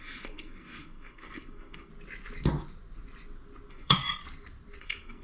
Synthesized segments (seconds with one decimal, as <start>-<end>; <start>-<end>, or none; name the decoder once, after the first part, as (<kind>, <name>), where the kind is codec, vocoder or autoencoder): 0.0-1.9 (codec, SNAC); 3.7-4.2; 4.8-5.2